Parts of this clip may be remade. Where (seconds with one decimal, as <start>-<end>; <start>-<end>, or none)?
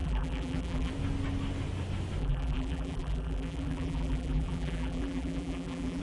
0.0-0.9; 2.2-6.0